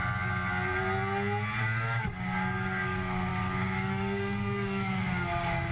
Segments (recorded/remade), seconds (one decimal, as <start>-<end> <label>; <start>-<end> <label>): 0.0-1.6 recorded; 1.6-5.7 remade